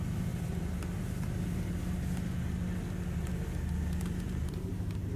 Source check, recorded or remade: recorded